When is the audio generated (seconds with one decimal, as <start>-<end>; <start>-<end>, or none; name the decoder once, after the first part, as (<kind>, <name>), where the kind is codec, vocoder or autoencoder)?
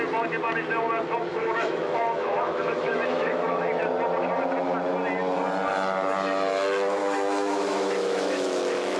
1.3-3.7 (autoencoder, DAC-VAE); 7.0-9.0